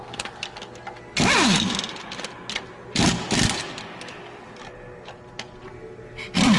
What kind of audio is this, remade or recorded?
recorded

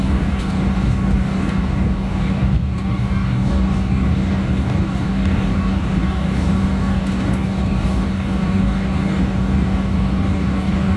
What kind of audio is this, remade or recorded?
remade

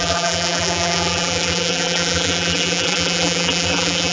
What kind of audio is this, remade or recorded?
remade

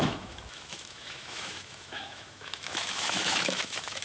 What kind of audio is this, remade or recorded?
remade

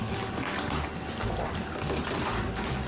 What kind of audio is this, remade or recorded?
recorded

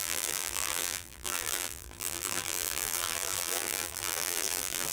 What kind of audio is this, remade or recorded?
remade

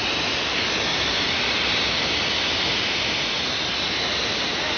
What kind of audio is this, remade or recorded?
recorded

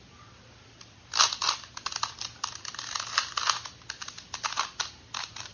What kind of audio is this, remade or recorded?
recorded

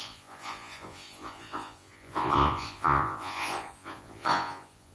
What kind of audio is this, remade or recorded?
remade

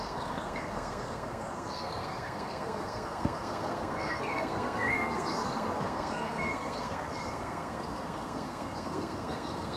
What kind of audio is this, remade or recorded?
remade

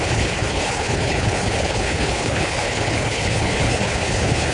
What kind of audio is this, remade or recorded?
remade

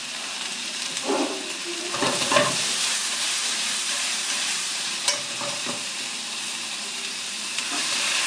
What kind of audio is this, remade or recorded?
remade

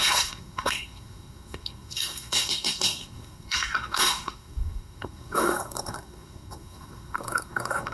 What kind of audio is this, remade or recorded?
remade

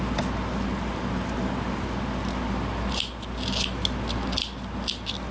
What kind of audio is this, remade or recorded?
recorded